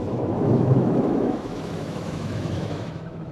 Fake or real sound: fake